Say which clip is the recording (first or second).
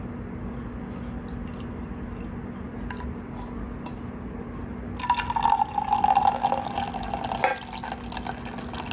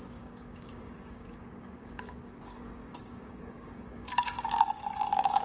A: first